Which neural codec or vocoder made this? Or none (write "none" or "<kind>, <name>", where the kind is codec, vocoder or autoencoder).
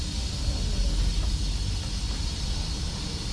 none